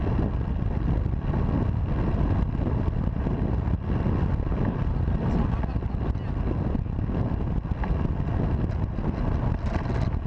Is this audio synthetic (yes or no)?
no